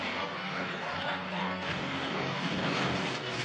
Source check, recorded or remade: remade